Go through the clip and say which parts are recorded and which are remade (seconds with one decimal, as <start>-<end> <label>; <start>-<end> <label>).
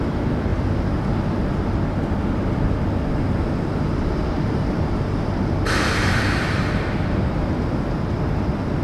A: 0.0-3.9 recorded; 3.9-6.9 remade; 6.9-8.8 recorded